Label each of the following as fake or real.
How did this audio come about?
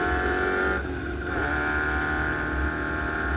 real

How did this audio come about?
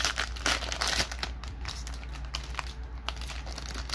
real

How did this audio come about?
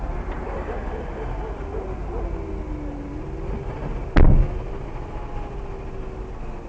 real